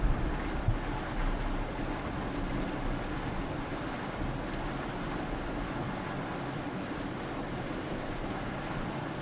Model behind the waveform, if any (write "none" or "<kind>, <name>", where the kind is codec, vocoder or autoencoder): none